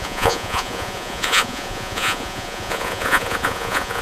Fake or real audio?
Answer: fake